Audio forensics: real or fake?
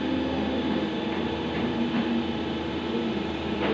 fake